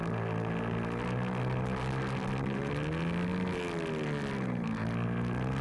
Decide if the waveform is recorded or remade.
recorded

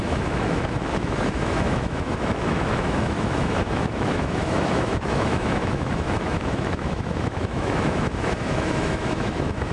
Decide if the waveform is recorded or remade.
remade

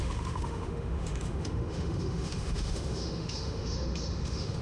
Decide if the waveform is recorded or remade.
remade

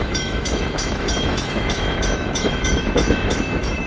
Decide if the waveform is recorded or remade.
remade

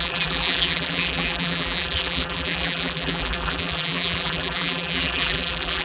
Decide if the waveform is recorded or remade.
remade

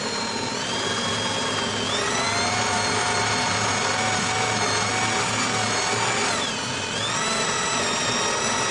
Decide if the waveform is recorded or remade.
recorded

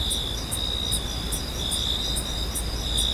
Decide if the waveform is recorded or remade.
recorded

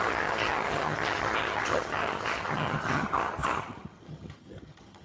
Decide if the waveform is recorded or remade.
remade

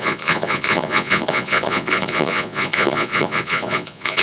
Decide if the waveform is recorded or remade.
remade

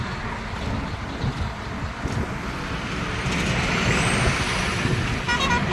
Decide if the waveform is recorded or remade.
recorded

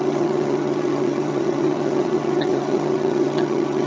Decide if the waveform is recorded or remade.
remade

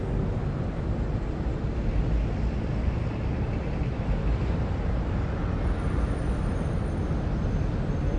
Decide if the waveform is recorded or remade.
recorded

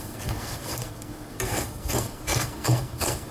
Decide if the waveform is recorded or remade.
remade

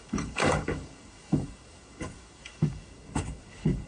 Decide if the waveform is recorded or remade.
remade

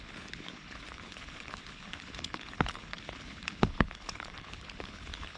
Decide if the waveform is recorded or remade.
remade